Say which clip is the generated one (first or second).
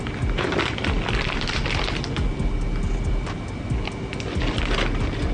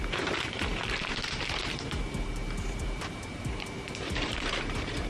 second